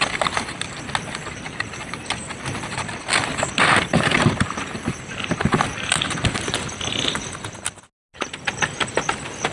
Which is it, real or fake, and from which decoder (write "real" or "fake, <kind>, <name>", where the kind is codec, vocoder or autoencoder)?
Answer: real